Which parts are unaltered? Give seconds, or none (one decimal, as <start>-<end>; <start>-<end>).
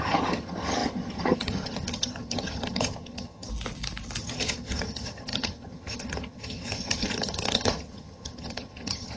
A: 3.5-4.2